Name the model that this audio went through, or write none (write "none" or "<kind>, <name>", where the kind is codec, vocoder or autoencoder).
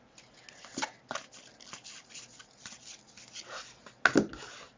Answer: none